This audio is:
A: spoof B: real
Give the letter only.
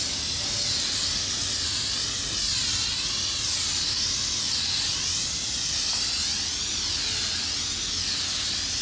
B